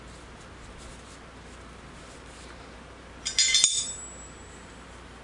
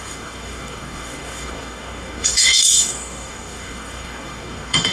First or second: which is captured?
first